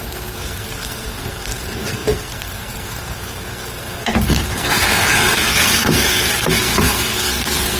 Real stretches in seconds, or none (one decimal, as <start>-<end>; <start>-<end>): none